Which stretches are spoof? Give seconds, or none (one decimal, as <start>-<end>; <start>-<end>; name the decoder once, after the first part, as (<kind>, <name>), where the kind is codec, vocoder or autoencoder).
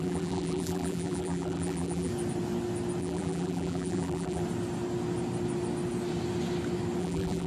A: 0.0-2.1 (vocoder, BigVGAN v2); 3.0-4.4; 7.0-7.5